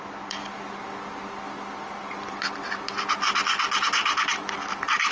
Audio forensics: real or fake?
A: real